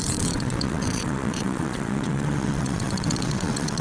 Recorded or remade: remade